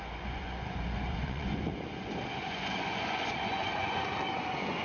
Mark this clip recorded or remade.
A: remade